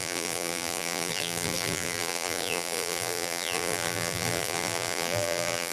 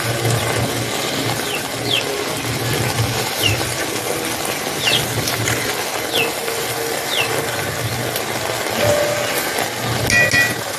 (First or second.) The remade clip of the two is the first